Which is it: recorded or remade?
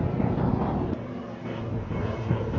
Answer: recorded